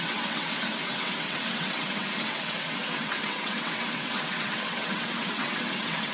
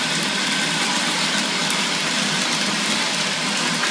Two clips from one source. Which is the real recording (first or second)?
second